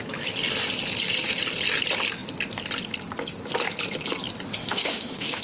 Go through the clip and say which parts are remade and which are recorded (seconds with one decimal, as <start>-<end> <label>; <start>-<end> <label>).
0.0-4.6 recorded; 4.6-5.4 remade